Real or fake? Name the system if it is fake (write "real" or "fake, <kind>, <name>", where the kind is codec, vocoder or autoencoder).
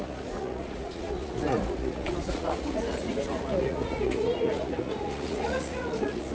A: fake, vocoder, Vocos